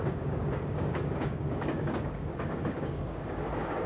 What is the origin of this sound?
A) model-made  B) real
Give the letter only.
A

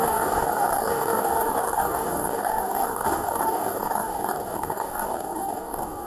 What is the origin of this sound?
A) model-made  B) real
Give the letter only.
A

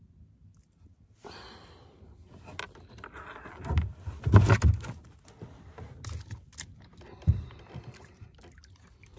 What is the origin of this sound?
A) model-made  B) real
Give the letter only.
B